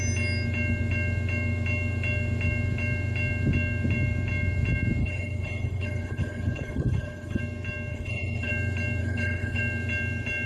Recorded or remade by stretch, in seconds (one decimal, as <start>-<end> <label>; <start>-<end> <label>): 0.0-5.0 recorded; 5.0-7.4 remade; 7.4-7.9 recorded; 7.9-8.5 remade; 8.5-9.0 recorded; 9.0-9.6 remade; 9.6-10.5 recorded